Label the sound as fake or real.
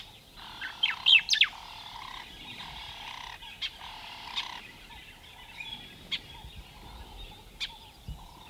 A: real